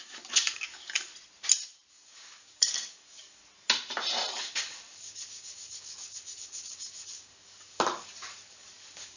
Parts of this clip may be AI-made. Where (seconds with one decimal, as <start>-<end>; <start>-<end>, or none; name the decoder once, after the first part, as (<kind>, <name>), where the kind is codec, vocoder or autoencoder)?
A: 0.0-1.1 (codec, DAC); 1.9-3.4; 4.3-9.2